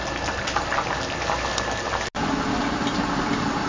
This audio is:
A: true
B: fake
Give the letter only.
A